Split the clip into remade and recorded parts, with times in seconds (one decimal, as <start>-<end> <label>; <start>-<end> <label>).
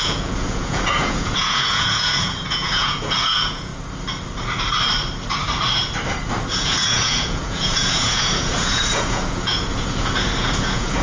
0.0-3.7 remade; 3.7-6.5 recorded; 6.5-11.0 remade